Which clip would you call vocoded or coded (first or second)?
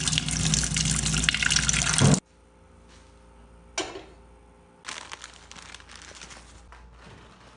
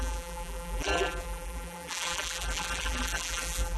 second